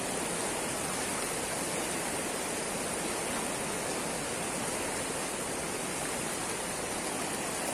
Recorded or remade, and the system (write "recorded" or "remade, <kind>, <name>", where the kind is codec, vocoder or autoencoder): recorded